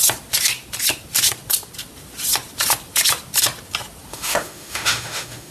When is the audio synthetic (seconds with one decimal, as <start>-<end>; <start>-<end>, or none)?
4.1-5.5